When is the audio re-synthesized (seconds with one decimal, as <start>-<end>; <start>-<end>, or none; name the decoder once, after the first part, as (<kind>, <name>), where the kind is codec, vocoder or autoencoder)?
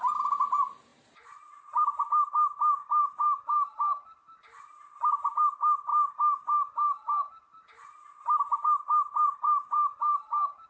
0.0-5.9 (vocoder, BigVGAN v2); 7.3-10.7